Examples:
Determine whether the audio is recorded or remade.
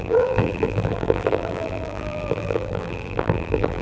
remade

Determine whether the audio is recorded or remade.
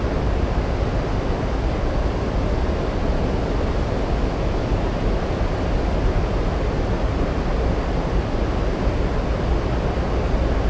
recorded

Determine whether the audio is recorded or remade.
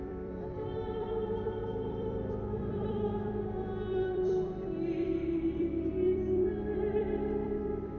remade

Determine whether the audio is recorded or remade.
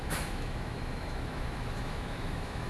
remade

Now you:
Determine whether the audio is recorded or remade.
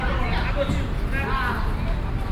recorded